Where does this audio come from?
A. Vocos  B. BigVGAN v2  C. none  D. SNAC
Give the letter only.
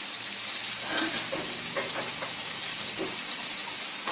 C